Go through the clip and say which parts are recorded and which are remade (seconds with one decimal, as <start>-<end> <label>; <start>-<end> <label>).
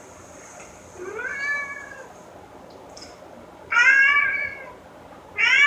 0.0-5.7 recorded